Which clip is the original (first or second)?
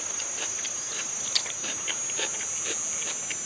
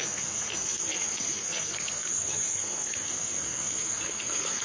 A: first